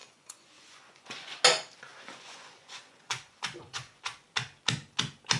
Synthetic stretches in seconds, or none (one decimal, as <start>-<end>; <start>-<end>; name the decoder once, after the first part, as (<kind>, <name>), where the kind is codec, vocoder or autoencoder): 0.0-1.4 (vocoder, Vocos); 1.9-4.0